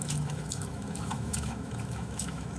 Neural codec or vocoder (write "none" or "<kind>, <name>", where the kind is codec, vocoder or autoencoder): autoencoder, DAC-VAE